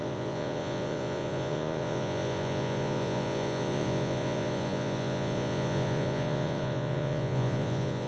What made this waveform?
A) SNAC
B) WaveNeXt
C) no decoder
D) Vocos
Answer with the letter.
D